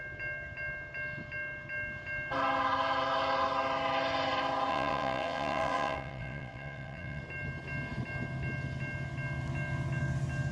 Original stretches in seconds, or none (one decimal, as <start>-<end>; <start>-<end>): 0.0-4.7; 7.2-10.5